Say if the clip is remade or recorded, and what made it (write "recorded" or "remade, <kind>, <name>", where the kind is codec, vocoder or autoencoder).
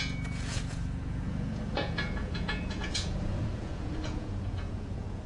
remade, vocoder, Vocos